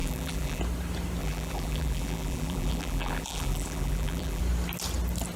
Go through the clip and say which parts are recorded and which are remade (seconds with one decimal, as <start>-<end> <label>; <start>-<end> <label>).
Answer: 0.0-0.6 remade; 0.6-1.2 recorded; 1.2-4.4 remade; 4.4-5.4 recorded